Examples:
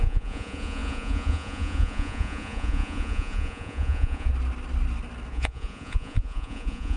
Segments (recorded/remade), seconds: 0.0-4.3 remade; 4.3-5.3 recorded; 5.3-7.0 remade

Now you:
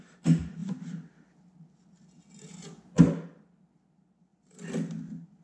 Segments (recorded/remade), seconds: 0.0-5.4 recorded

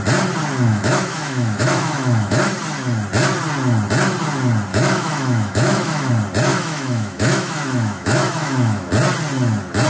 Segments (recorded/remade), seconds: 0.0-0.7 recorded; 0.7-2.5 remade; 2.5-4.7 recorded; 4.7-6.1 remade; 6.1-6.5 recorded; 6.5-8.9 remade; 8.9-9.9 recorded

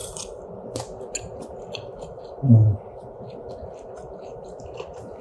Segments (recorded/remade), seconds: 0.0-5.2 recorded